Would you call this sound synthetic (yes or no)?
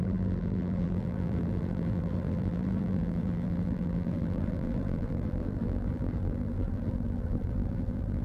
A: yes